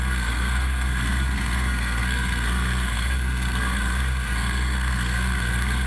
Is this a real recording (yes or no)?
no